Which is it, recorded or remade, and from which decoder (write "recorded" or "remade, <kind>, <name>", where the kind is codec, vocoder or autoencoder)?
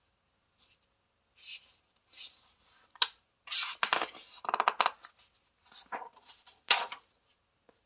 recorded